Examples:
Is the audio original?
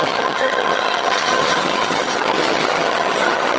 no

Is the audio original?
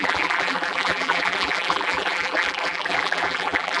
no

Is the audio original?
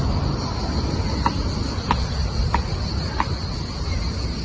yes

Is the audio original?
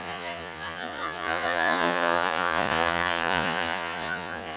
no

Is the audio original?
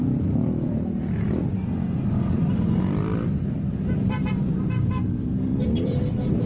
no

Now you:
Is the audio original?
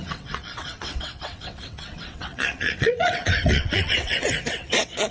no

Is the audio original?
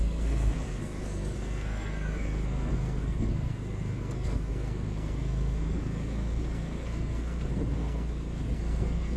no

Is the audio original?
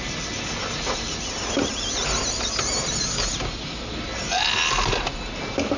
yes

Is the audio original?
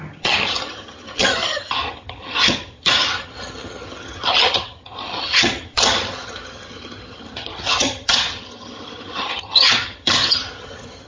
no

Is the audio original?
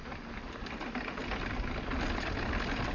yes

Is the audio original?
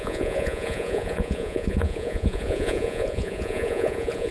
no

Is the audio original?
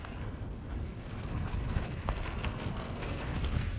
no